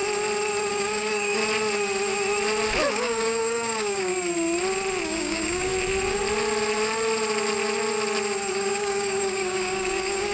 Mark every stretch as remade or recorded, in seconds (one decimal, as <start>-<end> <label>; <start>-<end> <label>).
0.0-0.7 recorded; 0.7-1.4 remade; 1.4-2.9 recorded; 2.9-4.1 remade; 4.1-5.0 recorded; 5.0-5.7 remade; 5.7-8.5 recorded; 8.5-10.3 remade